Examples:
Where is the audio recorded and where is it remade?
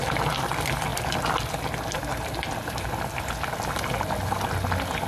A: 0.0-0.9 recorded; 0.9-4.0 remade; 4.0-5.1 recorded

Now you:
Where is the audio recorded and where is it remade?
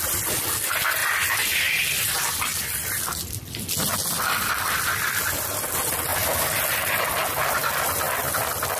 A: 0.0-1.0 recorded; 1.0-3.7 remade; 3.7-6.1 recorded; 6.1-7.1 remade; 7.1-8.8 recorded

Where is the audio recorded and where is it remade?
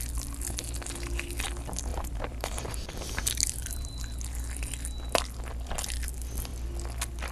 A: 0.0-1.9 recorded; 1.9-4.0 remade; 4.0-7.3 recorded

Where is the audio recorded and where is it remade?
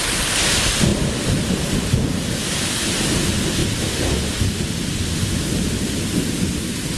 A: 0.0-0.9 recorded; 0.9-2.2 remade; 2.2-3.6 recorded; 3.6-5.6 remade; 5.6-7.0 recorded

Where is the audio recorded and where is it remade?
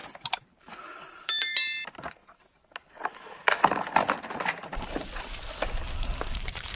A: 0.0-0.5 recorded; 0.5-2.2 remade; 2.2-6.3 recorded; 6.3-6.8 remade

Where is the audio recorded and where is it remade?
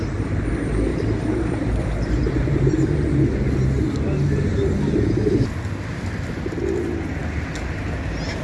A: 0.0-0.9 recorded; 0.9-2.7 remade; 2.7-8.4 recorded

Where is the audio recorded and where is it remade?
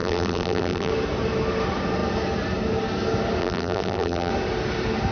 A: 0.0-0.9 remade; 0.9-3.4 recorded; 3.4-4.3 remade; 4.3-5.1 recorded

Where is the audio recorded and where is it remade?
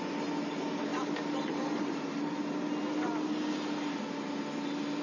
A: 0.0-0.9 recorded; 0.9-2.3 remade; 2.3-5.0 recorded